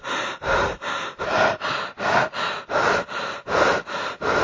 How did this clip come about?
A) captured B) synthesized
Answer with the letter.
A